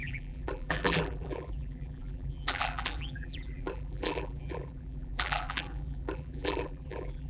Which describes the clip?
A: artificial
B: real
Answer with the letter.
A